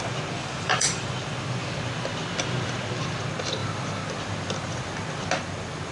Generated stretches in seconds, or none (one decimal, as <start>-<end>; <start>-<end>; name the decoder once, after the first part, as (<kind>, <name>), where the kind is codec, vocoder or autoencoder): 0.4-1.1 (vocoder, BigVGAN v2)